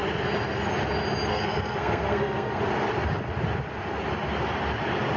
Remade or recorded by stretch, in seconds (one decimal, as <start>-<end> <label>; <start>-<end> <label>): 0.0-1.3 recorded; 1.3-2.6 remade; 2.6-5.2 recorded